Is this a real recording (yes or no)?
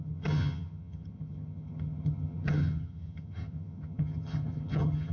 no